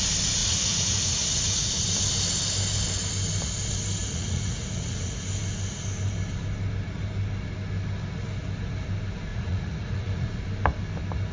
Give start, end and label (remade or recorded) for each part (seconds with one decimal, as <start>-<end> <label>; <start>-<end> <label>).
0.0-0.4 recorded; 0.4-1.8 remade; 1.8-4.0 recorded; 4.0-5.1 remade; 5.1-9.3 recorded; 9.3-10.4 remade; 10.4-11.3 recorded